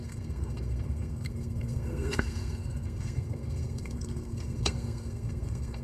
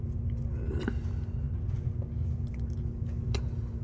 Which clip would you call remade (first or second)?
first